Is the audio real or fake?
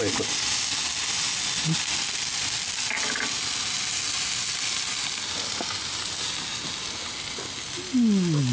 real